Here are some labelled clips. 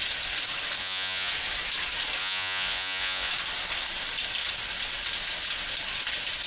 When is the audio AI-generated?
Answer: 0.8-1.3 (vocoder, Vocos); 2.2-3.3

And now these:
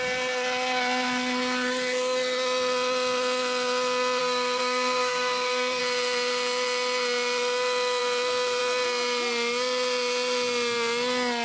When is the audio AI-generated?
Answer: 4.2-5.8 (codec, SNAC)